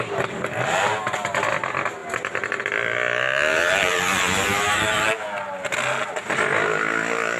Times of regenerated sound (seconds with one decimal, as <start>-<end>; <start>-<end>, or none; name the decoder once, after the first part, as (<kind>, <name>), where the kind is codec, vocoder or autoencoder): 3.5-5.1 (vocoder, BigVGAN v2)